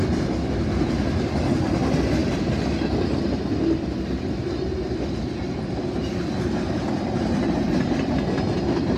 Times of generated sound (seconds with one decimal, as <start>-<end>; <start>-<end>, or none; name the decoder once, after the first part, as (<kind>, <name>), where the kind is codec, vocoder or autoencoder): none